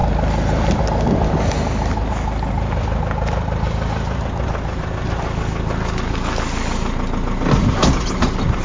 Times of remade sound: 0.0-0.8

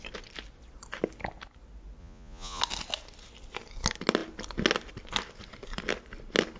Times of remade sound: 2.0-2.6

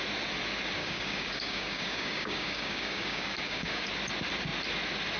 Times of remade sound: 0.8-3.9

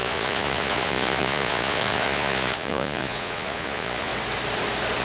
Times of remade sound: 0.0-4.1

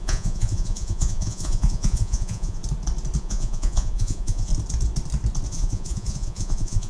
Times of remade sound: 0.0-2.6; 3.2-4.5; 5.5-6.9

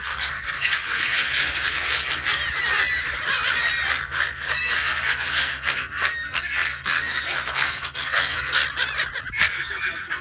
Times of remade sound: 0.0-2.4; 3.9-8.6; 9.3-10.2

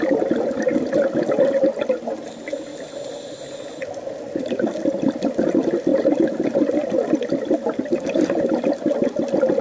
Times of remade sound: none

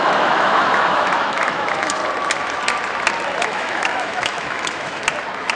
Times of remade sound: 0.0-2.0; 3.4-5.0